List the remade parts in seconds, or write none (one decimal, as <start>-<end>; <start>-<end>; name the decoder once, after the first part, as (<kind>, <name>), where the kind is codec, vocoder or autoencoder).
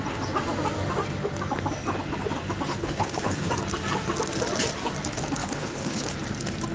2.7-3.5 (codec, HILCodec); 5.4-6.1